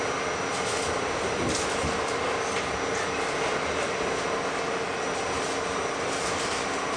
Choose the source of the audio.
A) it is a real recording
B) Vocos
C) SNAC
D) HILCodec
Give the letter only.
A